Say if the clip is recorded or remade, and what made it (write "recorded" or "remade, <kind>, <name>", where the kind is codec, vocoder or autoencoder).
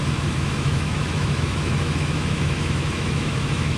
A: remade, autoencoder, DAC-VAE